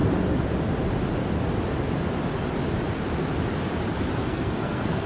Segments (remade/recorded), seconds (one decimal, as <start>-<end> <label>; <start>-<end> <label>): 0.0-4.2 recorded; 4.2-5.1 remade